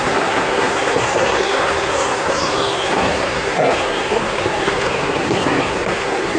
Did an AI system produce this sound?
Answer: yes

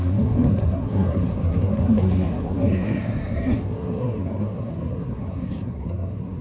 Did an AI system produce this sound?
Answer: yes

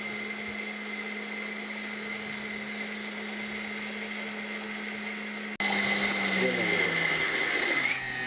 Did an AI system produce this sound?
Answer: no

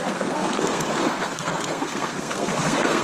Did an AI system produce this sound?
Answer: yes